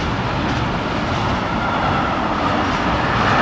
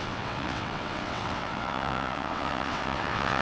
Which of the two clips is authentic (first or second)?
first